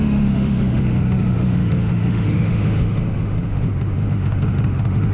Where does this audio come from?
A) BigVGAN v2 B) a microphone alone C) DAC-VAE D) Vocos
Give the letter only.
C